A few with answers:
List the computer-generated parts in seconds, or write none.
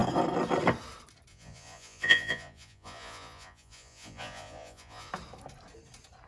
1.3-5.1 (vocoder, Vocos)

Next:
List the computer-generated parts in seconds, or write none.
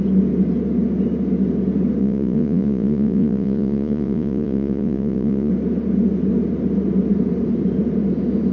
2.0-5.5 (vocoder, Vocos)